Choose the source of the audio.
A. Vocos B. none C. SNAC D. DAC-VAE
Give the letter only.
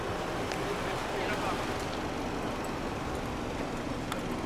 B